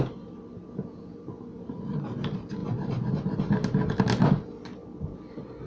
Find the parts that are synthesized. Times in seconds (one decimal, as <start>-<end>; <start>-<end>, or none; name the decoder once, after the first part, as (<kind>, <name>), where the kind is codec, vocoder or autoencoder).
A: 0.6-1.2 (vocoder, Vocos)

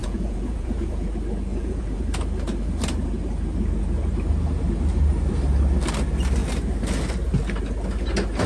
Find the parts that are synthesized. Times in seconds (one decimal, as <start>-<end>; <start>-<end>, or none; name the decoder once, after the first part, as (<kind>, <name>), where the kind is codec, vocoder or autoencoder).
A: 0.0-1.1 (vocoder, Vocos); 1.5-2.0

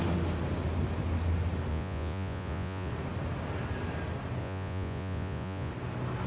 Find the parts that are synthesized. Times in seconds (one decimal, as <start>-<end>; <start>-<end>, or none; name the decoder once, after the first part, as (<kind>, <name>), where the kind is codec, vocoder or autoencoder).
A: 1.7-2.9 (vocoder, Vocos); 4.4-5.7

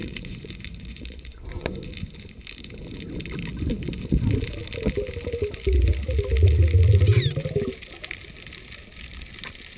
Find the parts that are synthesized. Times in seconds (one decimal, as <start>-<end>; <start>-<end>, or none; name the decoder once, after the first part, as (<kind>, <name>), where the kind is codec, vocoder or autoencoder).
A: 0.0-1.8 (vocoder, Vocos)

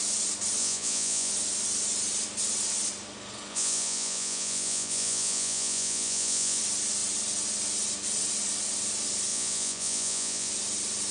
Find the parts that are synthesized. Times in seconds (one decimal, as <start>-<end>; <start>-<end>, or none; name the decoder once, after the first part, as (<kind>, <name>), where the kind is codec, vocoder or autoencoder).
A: 0.6-1.3 (vocoder, Vocos); 3.5-6.6; 9.3-10.5